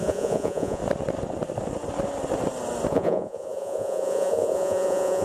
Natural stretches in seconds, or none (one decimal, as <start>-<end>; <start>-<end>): 0.8-2.9